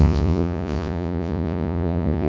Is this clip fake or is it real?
fake